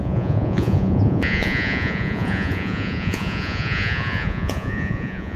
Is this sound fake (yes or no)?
yes